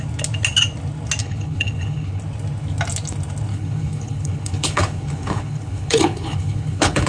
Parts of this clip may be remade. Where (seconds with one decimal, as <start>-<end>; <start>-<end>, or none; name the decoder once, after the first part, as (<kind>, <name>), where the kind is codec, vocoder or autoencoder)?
1.2-2.2 (codec, HILCodec); 3.5-7.1